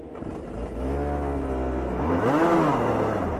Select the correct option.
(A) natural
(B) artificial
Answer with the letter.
A